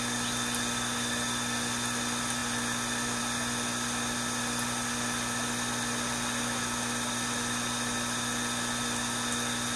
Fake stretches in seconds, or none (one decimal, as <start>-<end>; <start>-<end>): none